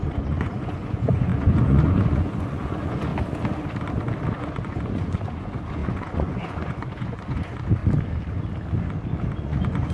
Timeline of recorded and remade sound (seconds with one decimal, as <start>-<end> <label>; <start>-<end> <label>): 0.0-3.1 remade; 3.1-4.3 recorded; 4.3-7.8 remade; 7.8-9.4 recorded; 9.4-9.9 remade